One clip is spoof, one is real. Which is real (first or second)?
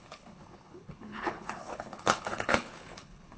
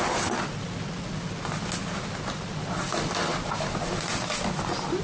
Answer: second